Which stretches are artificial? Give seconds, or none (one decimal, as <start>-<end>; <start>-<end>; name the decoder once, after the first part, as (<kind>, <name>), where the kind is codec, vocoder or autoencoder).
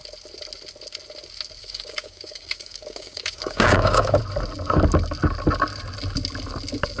1.6-4.2 (codec, DAC)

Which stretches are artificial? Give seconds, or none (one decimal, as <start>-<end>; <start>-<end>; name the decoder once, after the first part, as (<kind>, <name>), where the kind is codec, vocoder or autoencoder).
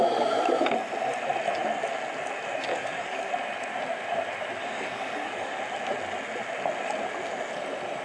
2.7-3.3 (codec, DAC); 4.6-5.6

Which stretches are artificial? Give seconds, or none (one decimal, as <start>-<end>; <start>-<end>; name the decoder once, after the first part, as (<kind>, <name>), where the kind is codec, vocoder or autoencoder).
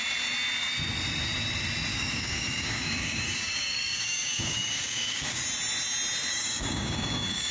1.9-5.4 (codec, DAC); 6.3-7.5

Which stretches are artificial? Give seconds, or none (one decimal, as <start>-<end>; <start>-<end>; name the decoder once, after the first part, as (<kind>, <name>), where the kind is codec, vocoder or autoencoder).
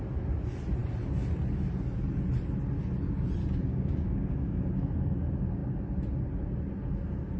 3.7-4.7 (codec, DAC)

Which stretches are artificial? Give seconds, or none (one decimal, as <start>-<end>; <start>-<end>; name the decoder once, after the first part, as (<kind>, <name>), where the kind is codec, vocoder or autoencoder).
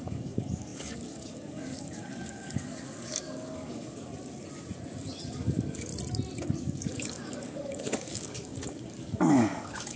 0.0-4.1 (codec, DAC); 5.3-5.9; 6.6-10.0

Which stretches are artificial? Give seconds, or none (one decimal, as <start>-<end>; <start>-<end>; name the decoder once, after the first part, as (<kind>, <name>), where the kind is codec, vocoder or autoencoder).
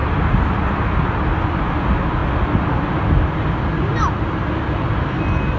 none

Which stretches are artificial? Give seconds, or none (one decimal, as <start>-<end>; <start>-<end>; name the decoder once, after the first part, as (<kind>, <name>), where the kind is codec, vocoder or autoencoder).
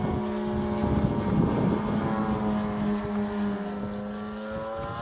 none